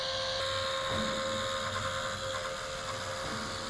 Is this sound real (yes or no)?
yes